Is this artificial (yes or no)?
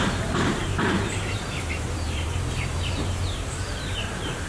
yes